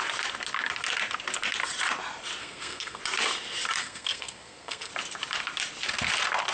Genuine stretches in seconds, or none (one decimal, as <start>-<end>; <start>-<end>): 0.0-2.4; 3.0-3.8; 4.9-6.5